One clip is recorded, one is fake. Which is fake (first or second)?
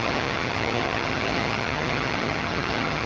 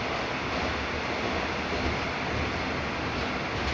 first